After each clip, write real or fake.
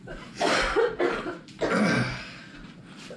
real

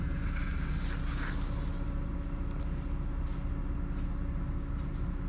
real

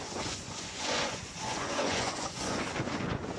fake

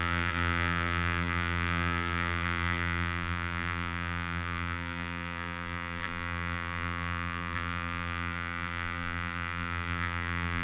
fake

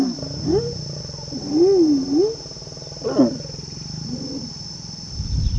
real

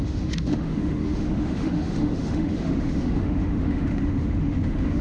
fake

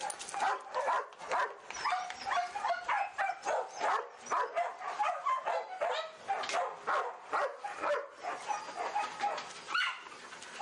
real